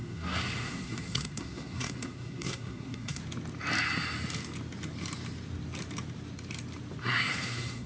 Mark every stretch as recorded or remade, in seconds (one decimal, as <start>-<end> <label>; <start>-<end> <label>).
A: 0.0-3.2 remade; 3.2-7.0 recorded; 7.0-7.9 remade